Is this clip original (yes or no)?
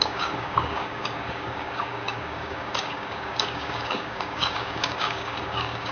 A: no